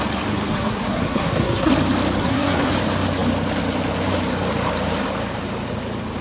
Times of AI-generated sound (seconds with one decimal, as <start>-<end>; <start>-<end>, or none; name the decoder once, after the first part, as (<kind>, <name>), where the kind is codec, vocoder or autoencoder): 0.5-1.7 (codec, SNAC); 2.2-2.7